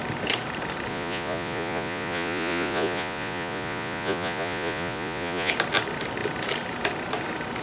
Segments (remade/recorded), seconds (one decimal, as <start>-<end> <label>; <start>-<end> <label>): 0.0-0.9 recorded; 0.9-5.5 remade; 5.5-7.6 recorded